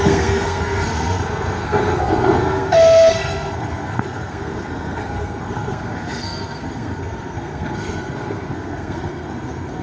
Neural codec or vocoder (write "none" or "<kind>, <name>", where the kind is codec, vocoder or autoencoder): codec, SNAC